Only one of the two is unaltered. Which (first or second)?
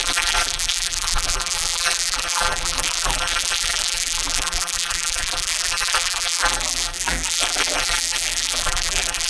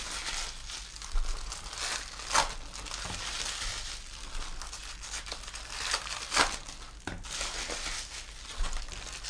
second